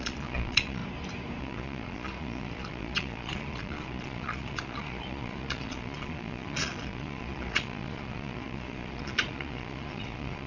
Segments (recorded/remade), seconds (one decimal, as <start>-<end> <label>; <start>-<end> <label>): 0.0-0.8 remade; 0.8-1.4 recorded; 1.4-10.5 remade